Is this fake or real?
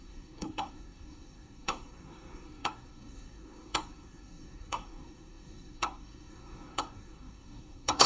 fake